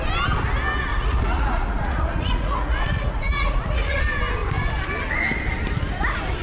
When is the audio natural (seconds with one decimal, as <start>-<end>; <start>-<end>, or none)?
0.0-0.9; 4.0-6.4